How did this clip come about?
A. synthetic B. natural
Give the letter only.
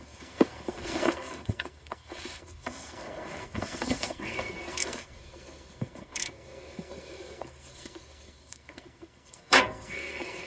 A